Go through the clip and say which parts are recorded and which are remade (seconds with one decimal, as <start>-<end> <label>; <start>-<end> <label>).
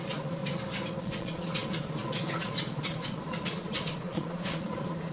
0.0-0.4 remade; 0.4-1.0 recorded; 1.0-5.1 remade